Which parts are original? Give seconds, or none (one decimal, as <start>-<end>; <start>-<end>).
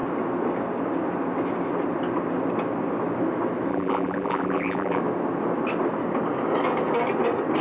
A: 0.0-3.7; 5.0-7.6